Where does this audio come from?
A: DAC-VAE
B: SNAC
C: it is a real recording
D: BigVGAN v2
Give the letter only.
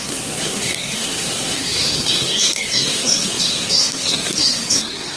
B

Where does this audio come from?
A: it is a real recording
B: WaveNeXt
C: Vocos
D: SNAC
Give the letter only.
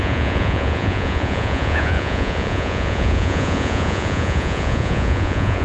C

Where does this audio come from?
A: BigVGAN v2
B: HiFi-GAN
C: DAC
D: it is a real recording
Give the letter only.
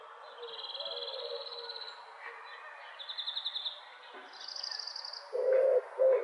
D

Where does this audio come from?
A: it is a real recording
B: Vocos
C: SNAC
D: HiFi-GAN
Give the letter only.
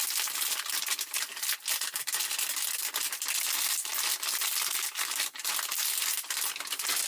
A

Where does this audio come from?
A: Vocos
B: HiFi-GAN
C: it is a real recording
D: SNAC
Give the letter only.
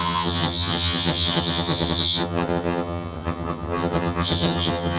B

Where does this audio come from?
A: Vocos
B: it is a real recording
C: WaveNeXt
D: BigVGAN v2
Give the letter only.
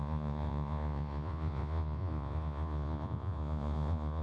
A